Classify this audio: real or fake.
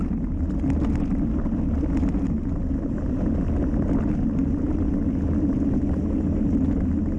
real